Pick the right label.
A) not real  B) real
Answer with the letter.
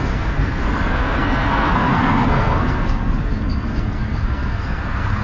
A